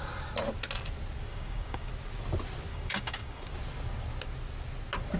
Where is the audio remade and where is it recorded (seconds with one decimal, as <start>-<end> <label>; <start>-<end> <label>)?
0.0-1.3 recorded; 1.3-1.9 remade; 1.9-2.7 recorded; 2.7-3.5 remade; 3.5-5.2 recorded